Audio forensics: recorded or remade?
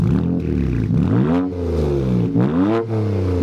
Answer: recorded